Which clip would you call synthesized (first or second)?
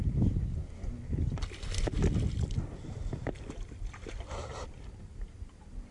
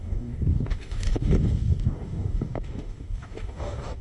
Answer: second